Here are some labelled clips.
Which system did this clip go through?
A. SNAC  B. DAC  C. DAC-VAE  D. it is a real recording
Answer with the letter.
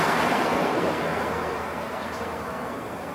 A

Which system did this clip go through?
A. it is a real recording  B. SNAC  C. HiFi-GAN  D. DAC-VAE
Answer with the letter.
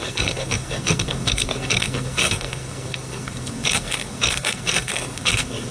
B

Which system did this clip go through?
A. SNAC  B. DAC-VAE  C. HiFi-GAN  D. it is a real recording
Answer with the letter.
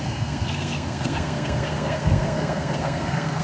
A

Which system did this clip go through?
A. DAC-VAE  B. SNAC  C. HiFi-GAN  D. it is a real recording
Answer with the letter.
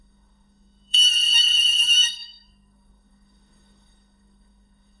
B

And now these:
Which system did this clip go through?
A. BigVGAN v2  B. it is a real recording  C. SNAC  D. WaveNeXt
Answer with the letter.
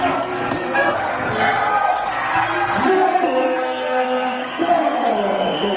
C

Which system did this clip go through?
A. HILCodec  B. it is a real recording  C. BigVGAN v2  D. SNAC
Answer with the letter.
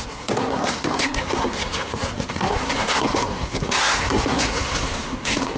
D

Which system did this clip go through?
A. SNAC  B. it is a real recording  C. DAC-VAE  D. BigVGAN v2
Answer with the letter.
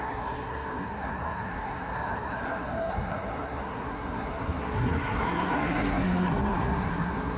A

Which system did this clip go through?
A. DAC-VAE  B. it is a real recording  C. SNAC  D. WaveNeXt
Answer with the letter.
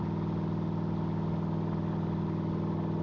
B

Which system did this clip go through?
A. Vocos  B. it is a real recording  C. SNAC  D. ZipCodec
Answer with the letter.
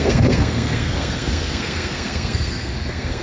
C